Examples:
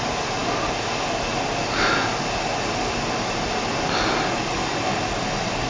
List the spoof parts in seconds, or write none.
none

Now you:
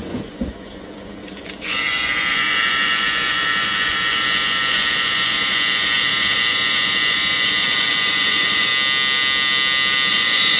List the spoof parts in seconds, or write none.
0.0-8.7; 10.1-10.6